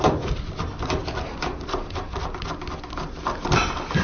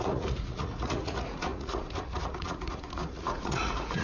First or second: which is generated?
second